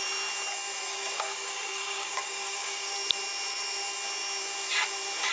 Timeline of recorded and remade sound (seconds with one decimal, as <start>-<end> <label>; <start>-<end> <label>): 0.0-0.9 recorded; 0.9-2.9 remade; 2.9-5.3 recorded